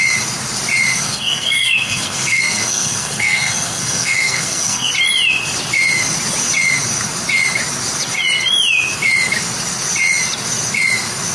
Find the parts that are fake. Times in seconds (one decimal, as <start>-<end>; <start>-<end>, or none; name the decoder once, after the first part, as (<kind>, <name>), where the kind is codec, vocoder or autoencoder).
0.9-4.9 (codec, SNAC)